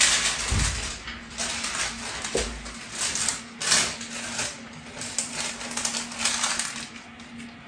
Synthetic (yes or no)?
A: no